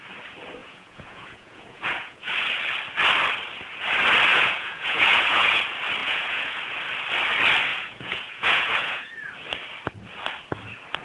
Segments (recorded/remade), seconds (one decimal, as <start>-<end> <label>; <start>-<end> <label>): 0.0-0.6 recorded; 0.6-2.3 remade; 2.3-4.3 recorded; 4.3-5.6 remade; 5.6-6.0 recorded; 6.0-6.6 remade; 6.6-7.7 recorded; 7.7-9.1 remade; 9.1-11.0 recorded